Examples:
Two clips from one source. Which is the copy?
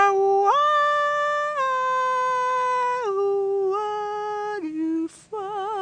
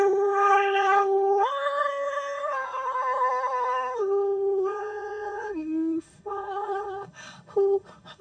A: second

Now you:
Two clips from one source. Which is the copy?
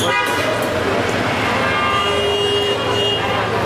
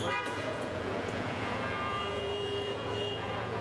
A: second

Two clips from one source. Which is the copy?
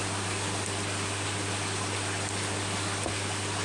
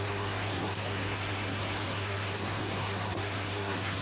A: second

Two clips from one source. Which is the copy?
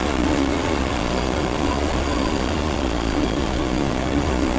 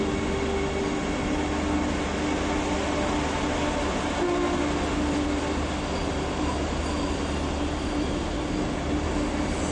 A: first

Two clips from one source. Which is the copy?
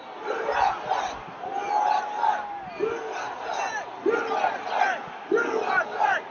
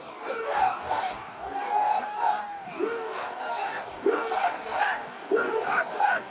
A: second